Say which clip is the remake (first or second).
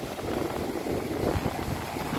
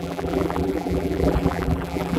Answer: second